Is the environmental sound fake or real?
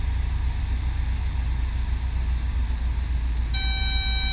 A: real